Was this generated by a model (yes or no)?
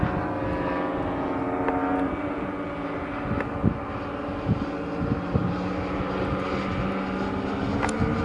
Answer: no